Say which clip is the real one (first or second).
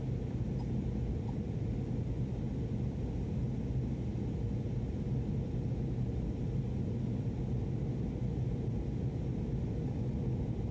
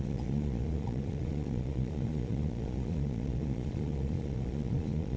first